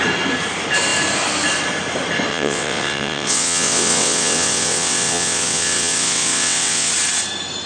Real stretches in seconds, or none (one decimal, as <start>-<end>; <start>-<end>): 0.0-2.3; 6.9-7.7